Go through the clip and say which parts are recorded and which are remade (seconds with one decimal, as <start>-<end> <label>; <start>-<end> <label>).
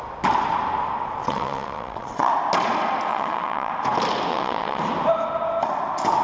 0.0-1.2 recorded; 1.2-2.3 remade; 2.3-3.1 recorded; 3.1-3.7 remade; 3.7-4.3 recorded; 4.3-4.8 remade; 4.8-6.2 recorded